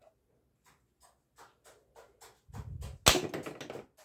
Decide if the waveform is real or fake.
real